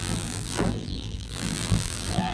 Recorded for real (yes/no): no